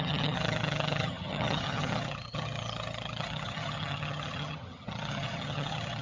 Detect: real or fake fake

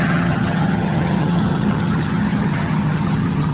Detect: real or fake fake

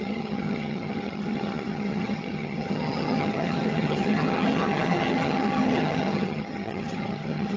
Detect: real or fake fake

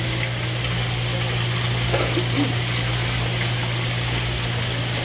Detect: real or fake real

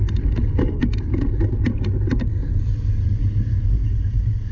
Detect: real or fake real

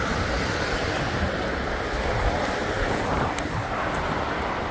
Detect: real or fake real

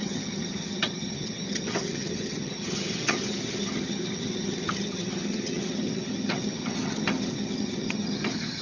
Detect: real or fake fake